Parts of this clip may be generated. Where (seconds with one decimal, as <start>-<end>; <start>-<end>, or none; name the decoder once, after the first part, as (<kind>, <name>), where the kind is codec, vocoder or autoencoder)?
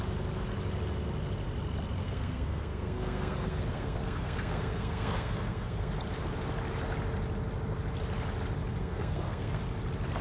2.0-5.9 (codec, SNAC); 8.8-9.6